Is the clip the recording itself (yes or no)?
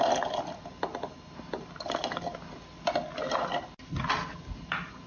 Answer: yes